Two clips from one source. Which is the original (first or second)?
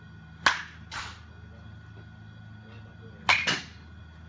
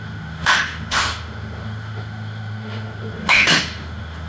first